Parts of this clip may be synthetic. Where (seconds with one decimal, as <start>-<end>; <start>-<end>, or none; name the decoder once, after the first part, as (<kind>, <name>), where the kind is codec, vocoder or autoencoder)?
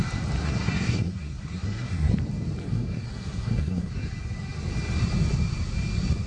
0.4-2.1 (codec, SNAC); 2.6-3.9